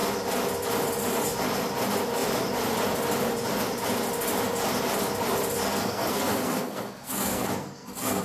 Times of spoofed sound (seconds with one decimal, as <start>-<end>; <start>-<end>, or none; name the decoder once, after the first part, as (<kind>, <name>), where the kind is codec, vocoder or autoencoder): 5.7-8.2 (codec, SNAC)